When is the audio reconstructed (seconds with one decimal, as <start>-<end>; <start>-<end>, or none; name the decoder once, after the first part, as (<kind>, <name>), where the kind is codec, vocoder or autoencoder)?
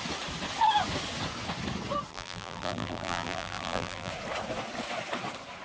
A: 2.1-4.1 (vocoder, BigVGAN v2)